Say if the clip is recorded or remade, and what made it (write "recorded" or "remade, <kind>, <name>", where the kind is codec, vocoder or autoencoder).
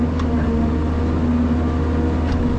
recorded